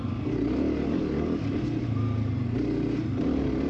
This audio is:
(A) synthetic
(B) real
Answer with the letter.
B